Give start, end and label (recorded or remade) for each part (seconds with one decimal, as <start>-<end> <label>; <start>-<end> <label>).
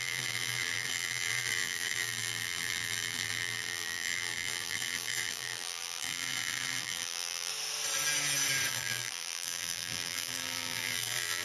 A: 0.0-7.5 remade; 7.5-8.7 recorded; 8.7-11.4 remade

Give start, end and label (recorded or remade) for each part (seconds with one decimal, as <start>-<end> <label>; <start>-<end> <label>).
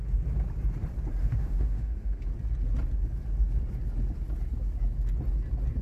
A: 0.0-1.2 recorded; 1.2-2.2 remade; 2.2-5.8 recorded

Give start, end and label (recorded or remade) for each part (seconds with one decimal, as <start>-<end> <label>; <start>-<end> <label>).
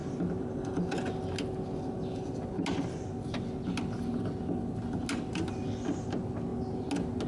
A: 0.0-7.3 recorded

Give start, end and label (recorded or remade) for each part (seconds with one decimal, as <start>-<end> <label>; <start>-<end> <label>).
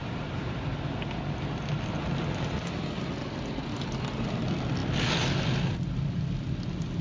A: 0.0-7.0 recorded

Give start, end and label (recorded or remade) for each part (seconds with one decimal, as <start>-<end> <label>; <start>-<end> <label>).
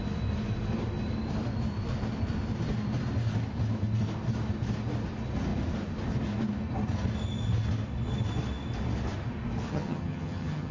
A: 0.0-9.7 recorded; 9.7-10.7 remade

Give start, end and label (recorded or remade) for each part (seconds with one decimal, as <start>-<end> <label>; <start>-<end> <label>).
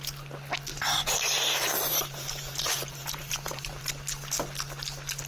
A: 0.0-0.7 recorded; 0.7-3.9 remade; 3.9-5.3 recorded